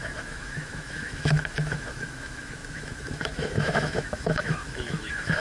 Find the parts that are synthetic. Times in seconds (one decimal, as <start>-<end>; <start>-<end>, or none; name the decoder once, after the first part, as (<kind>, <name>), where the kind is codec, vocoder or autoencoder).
0.0-5.4 (autoencoder, DAC-VAE)